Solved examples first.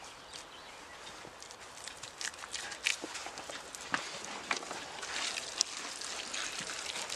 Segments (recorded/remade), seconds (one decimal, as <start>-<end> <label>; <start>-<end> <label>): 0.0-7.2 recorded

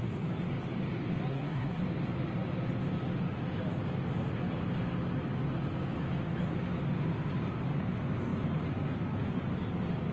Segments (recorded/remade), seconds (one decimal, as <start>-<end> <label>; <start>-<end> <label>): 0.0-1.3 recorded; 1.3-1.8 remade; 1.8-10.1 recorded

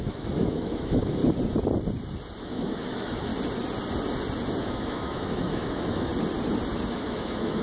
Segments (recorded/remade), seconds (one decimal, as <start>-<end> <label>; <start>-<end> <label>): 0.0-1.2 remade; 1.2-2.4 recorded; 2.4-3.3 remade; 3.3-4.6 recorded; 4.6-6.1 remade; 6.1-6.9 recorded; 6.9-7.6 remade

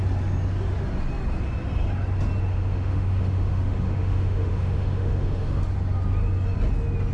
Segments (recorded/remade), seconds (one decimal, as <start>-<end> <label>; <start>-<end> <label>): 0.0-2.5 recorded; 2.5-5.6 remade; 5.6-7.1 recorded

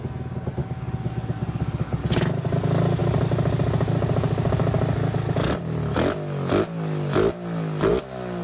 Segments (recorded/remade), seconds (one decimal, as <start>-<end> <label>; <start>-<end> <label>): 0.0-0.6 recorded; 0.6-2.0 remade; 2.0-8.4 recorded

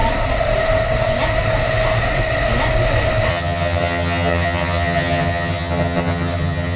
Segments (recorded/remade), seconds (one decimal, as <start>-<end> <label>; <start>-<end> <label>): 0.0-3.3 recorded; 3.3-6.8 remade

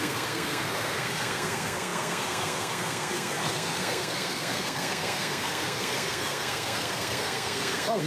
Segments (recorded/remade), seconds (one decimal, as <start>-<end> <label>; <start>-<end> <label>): 0.0-8.1 remade